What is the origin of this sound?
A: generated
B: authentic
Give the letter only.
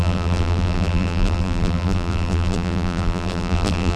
A